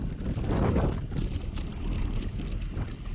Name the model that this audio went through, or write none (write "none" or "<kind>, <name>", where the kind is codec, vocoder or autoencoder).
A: none